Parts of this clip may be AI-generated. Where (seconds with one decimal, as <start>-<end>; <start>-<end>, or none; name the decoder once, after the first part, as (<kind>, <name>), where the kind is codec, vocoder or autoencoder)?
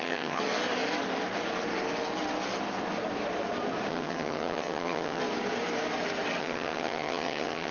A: 0.0-0.4 (vocoder, HiFi-GAN); 3.9-5.2; 6.4-7.7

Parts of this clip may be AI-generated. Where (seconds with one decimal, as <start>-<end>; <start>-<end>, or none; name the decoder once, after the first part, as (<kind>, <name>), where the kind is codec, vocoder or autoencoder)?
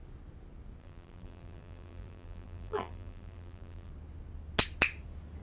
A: 0.8-3.9 (vocoder, BigVGAN v2)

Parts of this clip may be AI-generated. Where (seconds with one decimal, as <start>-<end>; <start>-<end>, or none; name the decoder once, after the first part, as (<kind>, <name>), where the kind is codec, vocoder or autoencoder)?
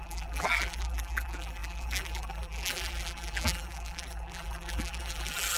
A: 0.0-5.6 (vocoder, BigVGAN v2)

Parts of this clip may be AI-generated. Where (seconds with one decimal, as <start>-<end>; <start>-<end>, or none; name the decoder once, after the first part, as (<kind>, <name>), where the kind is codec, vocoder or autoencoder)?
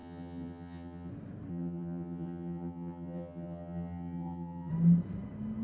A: 0.0-1.1 (vocoder, HiFi-GAN); 1.5-4.7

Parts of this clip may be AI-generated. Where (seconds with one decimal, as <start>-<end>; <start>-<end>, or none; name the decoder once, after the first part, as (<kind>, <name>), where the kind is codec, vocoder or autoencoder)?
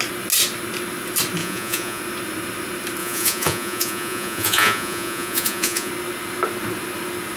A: 1.4-2.0 (vocoder, Vocos); 3.0-5.9